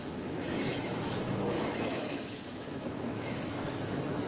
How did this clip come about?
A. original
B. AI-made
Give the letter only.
B